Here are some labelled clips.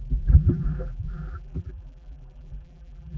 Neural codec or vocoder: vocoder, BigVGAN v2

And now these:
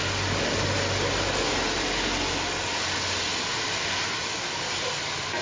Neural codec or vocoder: none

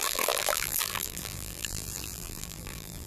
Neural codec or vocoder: vocoder, BigVGAN v2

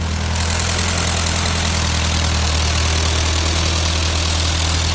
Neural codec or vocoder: none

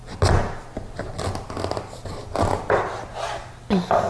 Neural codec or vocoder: none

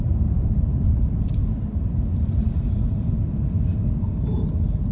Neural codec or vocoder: vocoder, BigVGAN v2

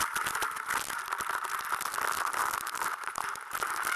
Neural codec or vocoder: none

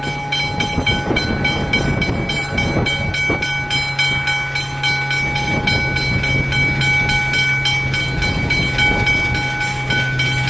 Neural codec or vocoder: none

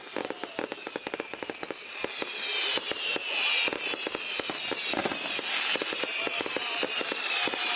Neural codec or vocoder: vocoder, BigVGAN v2